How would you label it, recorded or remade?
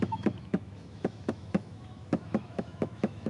remade